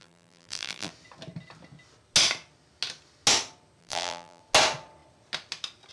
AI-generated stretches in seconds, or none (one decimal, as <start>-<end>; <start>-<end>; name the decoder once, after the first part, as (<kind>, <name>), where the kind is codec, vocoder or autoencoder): 0.0-0.9 (vocoder, BigVGAN v2); 3.8-4.4